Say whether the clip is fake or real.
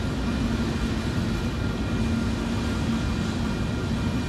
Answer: real